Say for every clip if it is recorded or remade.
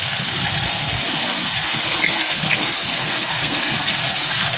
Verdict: remade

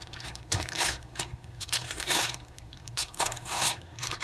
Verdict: remade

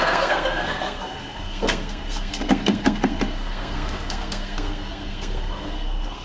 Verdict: remade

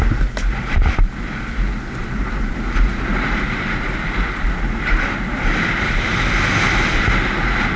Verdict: recorded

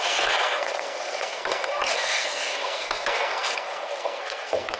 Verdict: remade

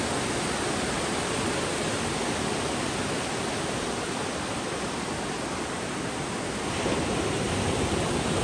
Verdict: recorded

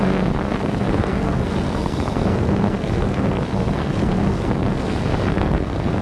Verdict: remade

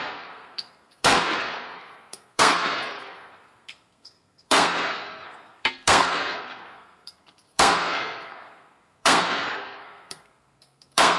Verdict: remade